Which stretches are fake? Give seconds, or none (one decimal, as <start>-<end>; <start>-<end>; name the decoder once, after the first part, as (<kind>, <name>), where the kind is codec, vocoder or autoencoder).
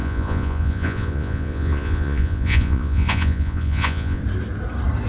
0.0-4.2 (vocoder, Vocos)